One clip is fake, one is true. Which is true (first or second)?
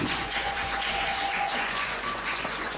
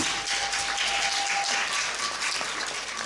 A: second